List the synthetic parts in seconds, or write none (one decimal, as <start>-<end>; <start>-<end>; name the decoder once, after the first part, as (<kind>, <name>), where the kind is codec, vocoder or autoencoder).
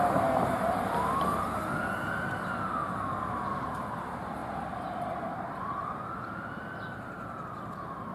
none